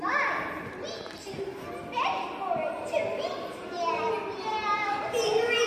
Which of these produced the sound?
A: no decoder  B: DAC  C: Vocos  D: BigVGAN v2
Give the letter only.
A